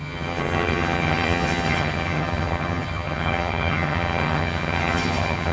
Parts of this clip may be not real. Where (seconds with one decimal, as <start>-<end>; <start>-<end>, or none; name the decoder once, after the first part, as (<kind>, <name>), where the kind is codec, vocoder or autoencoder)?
0.0-5.5 (vocoder, HiFi-GAN)